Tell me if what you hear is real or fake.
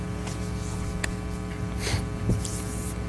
real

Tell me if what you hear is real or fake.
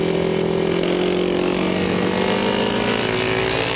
real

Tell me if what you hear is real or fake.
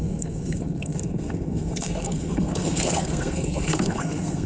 fake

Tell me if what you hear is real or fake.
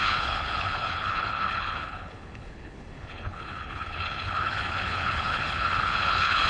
fake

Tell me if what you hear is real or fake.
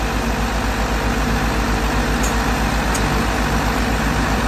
real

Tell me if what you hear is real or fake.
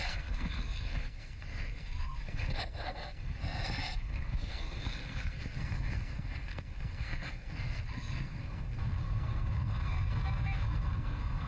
fake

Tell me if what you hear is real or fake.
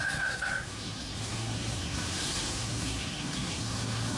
fake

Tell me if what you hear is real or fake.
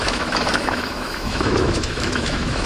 fake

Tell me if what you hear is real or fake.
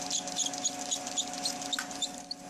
real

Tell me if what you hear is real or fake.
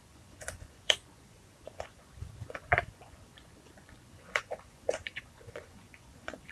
fake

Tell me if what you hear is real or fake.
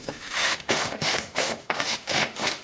fake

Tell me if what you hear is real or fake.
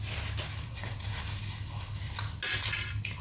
real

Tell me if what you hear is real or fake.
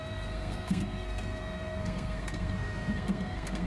fake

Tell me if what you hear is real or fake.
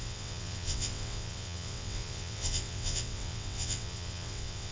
fake